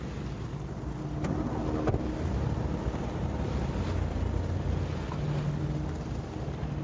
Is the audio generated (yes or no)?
no